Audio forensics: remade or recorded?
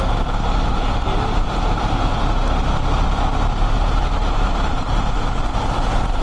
recorded